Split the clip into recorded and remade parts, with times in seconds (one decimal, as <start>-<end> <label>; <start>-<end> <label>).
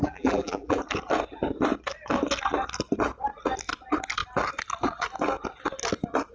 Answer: 0.0-0.8 remade; 0.8-6.3 recorded